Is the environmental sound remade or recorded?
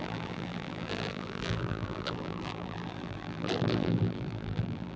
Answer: remade